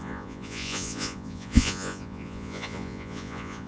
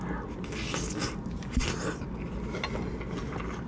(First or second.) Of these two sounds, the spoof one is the first